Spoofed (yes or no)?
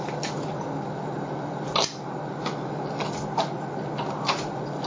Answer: no